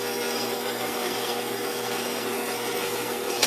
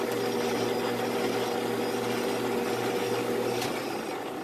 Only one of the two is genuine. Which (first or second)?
second